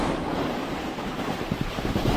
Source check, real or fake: real